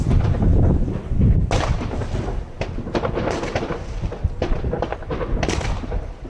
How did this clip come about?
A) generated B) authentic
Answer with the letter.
B